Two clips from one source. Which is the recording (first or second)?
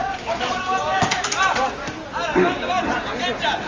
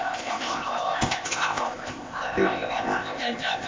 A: first